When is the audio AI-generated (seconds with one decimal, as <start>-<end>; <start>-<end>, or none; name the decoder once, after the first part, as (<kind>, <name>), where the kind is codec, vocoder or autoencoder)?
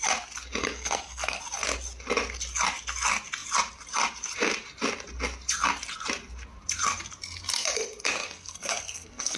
0.6-1.4 (codec, SNAC); 8.2-9.4